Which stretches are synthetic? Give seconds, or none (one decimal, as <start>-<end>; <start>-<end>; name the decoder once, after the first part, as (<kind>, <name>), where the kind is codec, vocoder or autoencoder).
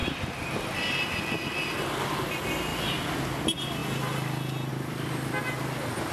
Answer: none